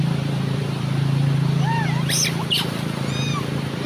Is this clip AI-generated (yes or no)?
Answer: yes